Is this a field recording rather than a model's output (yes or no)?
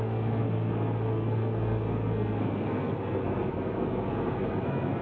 no